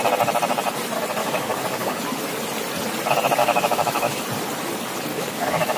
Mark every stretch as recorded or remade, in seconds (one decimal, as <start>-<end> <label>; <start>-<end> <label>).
0.0-1.2 recorded; 1.2-2.0 remade; 2.0-3.4 recorded; 3.4-4.2 remade; 4.2-5.1 recorded; 5.1-5.8 remade